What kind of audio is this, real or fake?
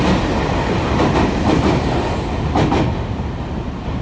real